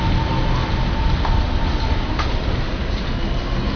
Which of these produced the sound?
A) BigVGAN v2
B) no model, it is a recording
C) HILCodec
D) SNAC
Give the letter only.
B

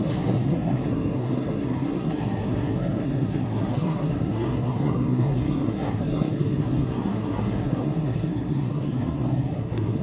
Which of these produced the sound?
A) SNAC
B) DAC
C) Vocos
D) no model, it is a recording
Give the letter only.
A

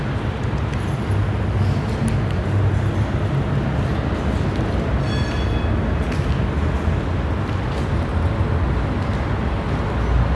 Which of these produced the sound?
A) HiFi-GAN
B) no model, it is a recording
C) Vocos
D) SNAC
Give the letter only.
B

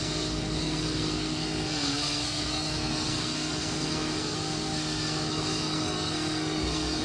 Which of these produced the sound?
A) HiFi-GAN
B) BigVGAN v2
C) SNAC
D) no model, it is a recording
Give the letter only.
C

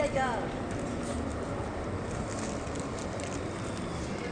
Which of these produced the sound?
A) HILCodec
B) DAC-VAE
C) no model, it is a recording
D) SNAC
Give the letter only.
C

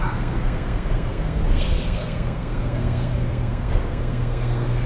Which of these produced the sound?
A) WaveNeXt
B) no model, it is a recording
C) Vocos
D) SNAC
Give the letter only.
D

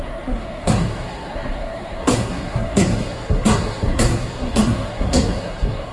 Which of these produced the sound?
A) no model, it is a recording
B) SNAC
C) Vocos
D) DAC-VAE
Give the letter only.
B